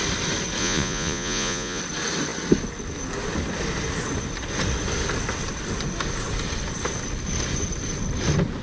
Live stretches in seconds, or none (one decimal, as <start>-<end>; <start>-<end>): 0.0-0.6; 1.8-8.6